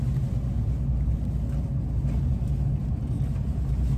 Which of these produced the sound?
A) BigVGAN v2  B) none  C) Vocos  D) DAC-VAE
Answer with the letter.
B